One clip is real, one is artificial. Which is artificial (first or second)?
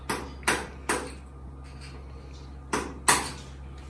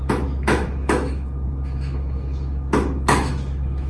second